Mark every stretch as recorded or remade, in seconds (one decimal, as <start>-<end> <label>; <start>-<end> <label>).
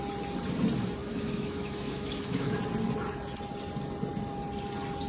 0.0-1.0 recorded; 1.0-2.6 remade; 2.6-5.1 recorded